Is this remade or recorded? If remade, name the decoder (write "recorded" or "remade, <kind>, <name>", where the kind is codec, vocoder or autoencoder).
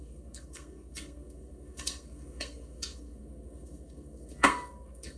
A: remade, codec, SNAC